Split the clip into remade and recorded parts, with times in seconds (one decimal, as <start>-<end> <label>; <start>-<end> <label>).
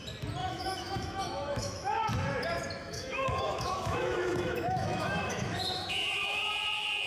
0.0-0.4 recorded; 0.4-2.1 remade; 2.1-2.8 recorded; 2.8-6.5 remade; 6.5-7.1 recorded